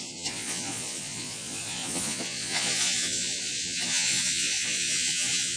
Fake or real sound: fake